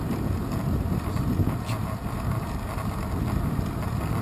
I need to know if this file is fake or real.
real